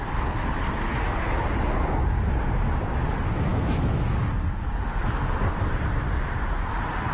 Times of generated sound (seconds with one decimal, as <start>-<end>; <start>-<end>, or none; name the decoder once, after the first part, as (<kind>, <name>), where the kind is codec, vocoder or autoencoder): 3.5-4.2 (autoencoder, DAC-VAE)